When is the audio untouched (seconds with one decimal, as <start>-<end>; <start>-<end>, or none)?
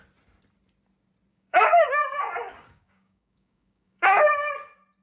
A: 0.0-1.3; 4.3-5.0